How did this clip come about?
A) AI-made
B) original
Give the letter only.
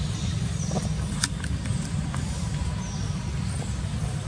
B